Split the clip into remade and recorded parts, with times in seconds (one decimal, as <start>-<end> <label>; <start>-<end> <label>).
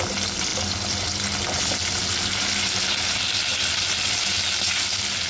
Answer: 0.0-5.3 recorded